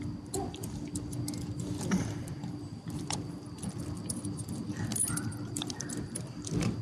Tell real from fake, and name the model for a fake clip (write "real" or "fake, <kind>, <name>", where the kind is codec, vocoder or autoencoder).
fake, vocoder, BigVGAN v2